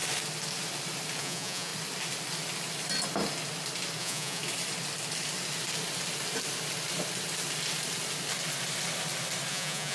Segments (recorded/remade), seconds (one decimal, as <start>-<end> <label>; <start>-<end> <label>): 0.0-1.2 recorded; 1.2-1.7 remade; 1.7-4.0 recorded; 4.0-4.4 remade; 4.4-9.5 recorded; 9.5-9.9 remade

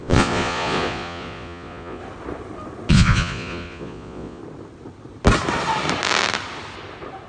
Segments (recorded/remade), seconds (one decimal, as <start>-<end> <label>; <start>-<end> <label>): 0.0-2.0 remade; 2.0-2.9 recorded; 2.9-4.4 remade; 4.4-7.3 recorded